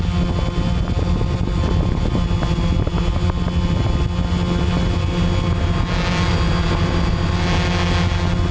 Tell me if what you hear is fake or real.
real